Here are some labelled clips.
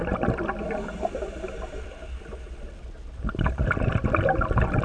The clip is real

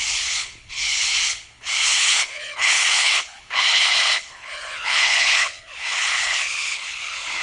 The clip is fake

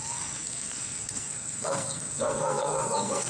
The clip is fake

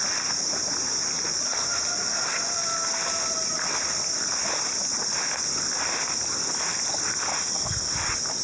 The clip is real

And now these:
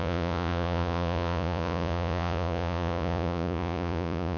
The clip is fake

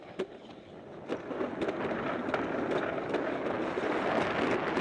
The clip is real